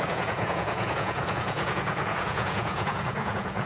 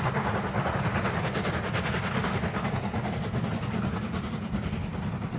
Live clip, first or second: second